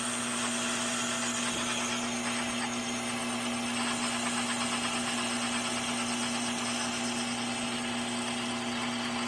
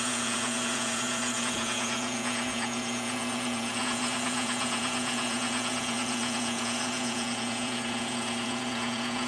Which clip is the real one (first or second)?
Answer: first